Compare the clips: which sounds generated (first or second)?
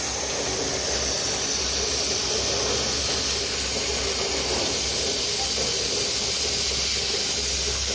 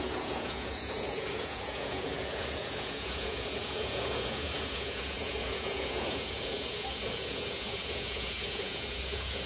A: second